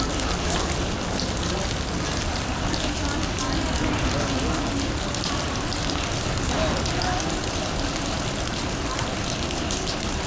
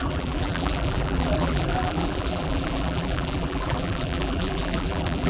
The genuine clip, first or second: first